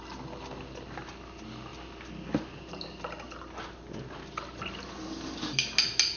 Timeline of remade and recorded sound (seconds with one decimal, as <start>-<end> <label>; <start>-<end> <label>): 0.0-6.2 recorded